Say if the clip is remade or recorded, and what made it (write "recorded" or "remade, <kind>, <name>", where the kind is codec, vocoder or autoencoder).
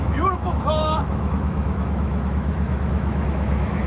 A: remade, autoencoder, DAC-VAE